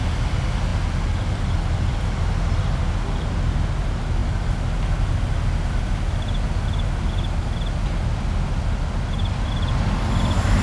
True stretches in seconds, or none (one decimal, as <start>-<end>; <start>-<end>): 0.0-10.6